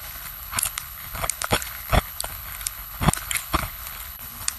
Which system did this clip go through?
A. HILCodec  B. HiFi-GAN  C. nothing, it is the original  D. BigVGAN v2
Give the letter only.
A